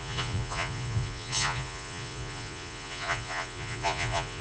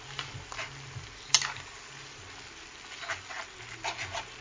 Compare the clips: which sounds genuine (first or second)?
second